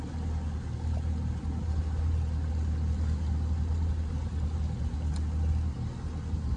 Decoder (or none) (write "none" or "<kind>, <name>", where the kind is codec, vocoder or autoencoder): none